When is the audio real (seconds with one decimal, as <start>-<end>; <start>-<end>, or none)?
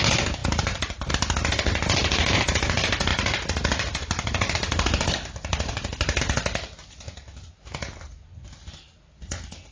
0.0-9.7